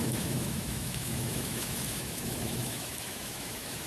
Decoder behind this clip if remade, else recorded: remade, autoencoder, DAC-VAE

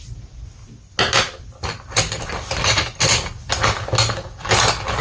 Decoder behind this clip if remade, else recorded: recorded